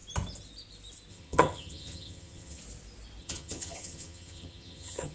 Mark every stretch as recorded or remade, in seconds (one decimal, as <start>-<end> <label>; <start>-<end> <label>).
0.0-1.1 recorded; 1.1-2.6 remade; 2.6-3.2 recorded; 3.2-5.1 remade

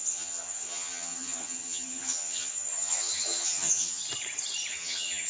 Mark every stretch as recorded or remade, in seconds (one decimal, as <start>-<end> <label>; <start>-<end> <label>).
0.0-4.0 remade; 4.0-4.7 recorded; 4.7-5.3 remade

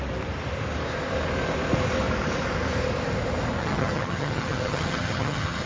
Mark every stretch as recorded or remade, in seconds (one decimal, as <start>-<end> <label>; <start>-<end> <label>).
0.0-3.6 recorded; 3.6-5.7 remade

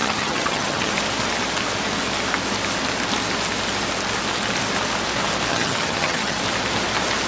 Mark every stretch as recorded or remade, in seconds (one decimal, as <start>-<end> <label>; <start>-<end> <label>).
0.0-0.9 remade; 0.9-5.5 recorded; 5.5-6.4 remade; 6.4-7.3 recorded

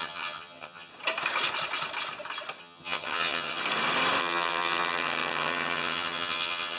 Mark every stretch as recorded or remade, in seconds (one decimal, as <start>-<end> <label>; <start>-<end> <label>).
0.0-0.9 remade; 0.9-2.6 recorded; 2.6-3.6 remade; 3.6-4.2 recorded; 4.2-6.8 remade

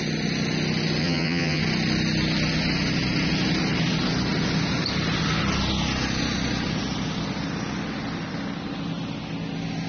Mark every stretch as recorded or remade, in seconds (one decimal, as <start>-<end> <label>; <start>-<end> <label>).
0.0-1.0 recorded; 1.0-1.6 remade; 1.6-9.9 recorded